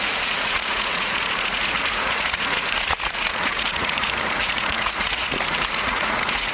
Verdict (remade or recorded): remade